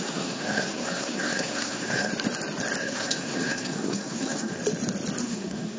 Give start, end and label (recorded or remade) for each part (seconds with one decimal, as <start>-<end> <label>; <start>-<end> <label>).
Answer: 0.0-2.1 remade; 2.1-2.8 recorded; 2.8-4.6 remade; 4.6-5.2 recorded; 5.2-5.8 remade